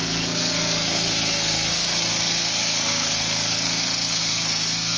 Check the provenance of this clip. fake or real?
fake